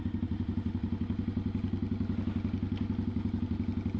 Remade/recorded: recorded